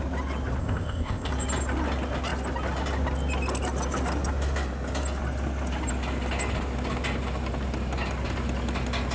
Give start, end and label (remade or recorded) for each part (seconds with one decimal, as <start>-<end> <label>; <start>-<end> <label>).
0.0-0.6 recorded; 0.6-1.3 remade; 1.3-9.1 recorded